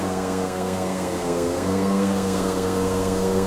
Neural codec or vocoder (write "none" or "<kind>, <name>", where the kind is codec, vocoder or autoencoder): codec, SNAC